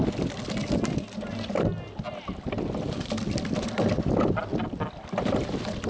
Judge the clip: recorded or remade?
recorded